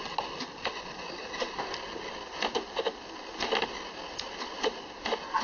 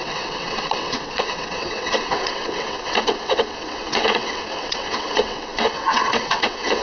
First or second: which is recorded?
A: first